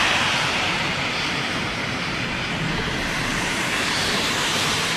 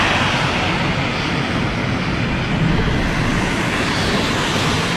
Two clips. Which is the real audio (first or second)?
second